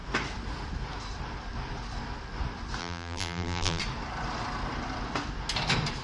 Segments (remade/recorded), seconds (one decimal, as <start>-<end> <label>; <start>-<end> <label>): 0.0-2.8 recorded; 2.8-3.8 remade; 3.8-6.0 recorded